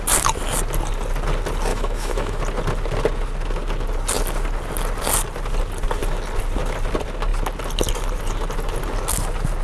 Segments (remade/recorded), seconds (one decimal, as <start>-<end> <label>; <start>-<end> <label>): 0.0-1.7 recorded; 1.7-2.4 remade; 2.4-9.6 recorded